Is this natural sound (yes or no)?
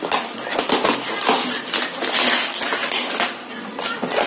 yes